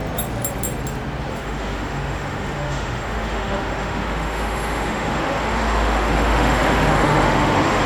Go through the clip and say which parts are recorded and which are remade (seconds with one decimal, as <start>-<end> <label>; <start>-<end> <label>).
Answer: 0.0-1.3 recorded; 1.3-7.9 remade